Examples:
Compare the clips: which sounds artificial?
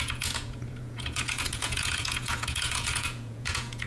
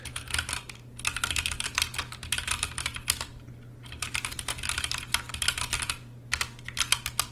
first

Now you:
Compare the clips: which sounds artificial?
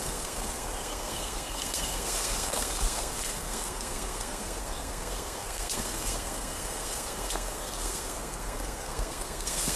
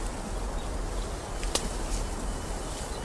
first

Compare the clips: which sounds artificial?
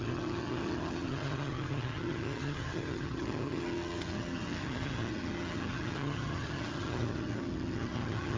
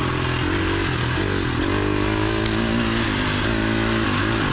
first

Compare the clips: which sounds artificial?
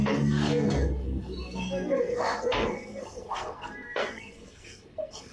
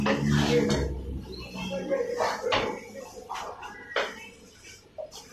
first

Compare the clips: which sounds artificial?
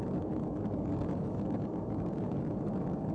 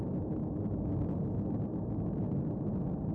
first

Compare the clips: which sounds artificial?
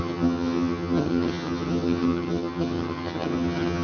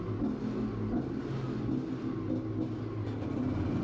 first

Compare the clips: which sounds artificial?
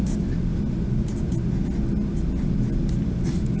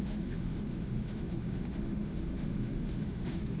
second